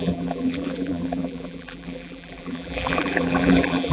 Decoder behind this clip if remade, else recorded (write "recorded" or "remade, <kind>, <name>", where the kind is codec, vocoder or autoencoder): remade, vocoder, BigVGAN v2